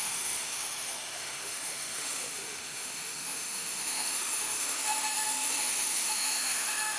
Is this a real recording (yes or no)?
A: no